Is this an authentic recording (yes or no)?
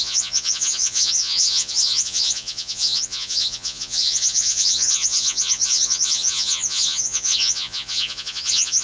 no